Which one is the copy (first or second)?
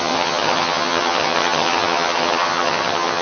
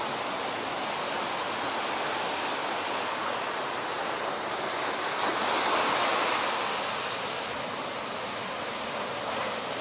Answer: first